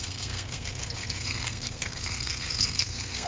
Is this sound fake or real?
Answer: fake